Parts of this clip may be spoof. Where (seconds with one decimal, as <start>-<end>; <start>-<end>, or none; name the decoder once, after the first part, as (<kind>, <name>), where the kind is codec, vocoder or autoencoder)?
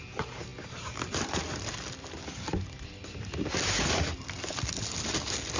none